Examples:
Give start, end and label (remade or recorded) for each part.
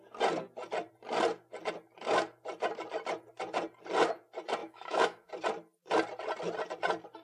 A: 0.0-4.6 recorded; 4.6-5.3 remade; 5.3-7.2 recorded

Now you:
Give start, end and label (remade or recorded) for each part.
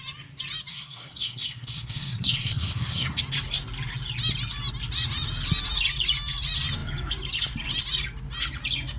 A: 0.0-0.7 recorded; 0.7-3.2 remade; 3.2-9.0 recorded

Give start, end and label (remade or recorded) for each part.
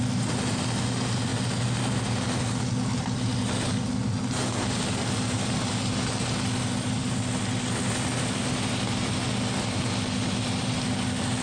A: 0.0-11.4 recorded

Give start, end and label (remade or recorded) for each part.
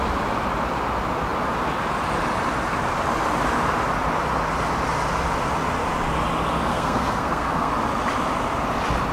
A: 0.0-6.7 recorded; 6.7-7.7 remade; 7.7-9.1 recorded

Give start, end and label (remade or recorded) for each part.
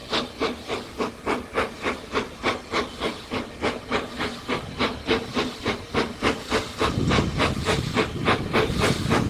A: 0.0-9.3 recorded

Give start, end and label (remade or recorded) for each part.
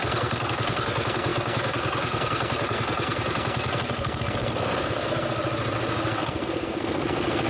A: 0.0-5.4 remade; 5.4-6.1 recorded; 6.1-7.5 remade